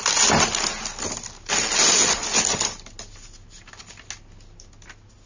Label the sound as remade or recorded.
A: recorded